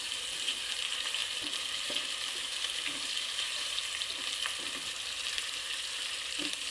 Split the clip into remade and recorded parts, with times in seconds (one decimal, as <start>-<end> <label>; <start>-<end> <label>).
0.0-4.1 remade; 4.1-5.1 recorded; 5.1-6.7 remade